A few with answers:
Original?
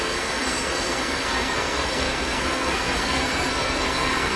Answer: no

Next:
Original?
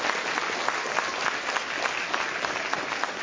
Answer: yes